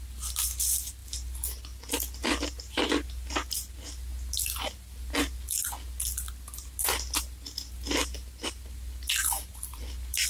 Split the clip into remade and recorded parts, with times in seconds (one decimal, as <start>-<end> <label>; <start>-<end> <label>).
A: 0.0-9.2 recorded; 9.2-9.8 remade; 9.8-10.3 recorded